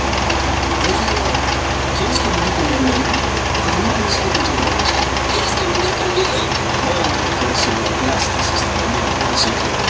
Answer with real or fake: real